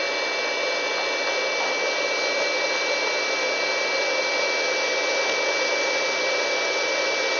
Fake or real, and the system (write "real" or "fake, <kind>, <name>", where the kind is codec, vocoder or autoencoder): real